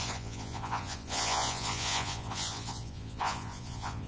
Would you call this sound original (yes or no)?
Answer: no